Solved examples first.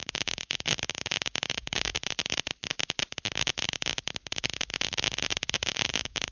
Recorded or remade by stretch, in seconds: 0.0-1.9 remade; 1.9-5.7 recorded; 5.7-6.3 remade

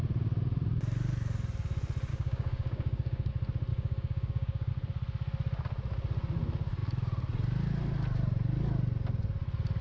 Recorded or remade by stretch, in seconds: 0.0-2.1 recorded; 2.1-3.3 remade; 3.3-3.7 recorded; 3.7-4.7 remade; 4.7-9.8 recorded

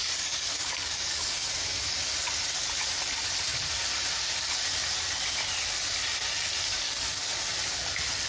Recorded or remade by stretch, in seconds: 0.0-1.5 remade; 1.5-6.7 recorded; 6.7-7.3 remade; 7.3-8.3 recorded

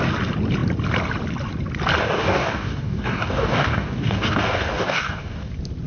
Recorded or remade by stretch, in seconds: 0.0-2.0 recorded; 2.0-5.5 remade; 5.5-5.9 recorded

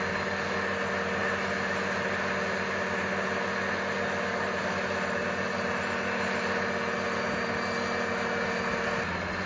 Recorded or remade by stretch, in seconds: 0.0-9.5 recorded

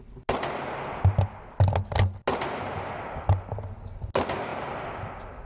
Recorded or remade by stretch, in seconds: 0.0-5.5 recorded